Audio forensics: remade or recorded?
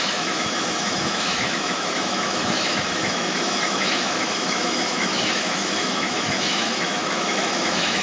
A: remade